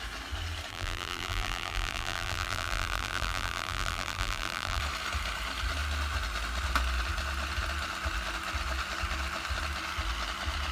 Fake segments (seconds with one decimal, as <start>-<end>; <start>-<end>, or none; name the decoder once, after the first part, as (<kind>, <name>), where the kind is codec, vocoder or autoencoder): 0.7-4.8 (vocoder, BigVGAN v2)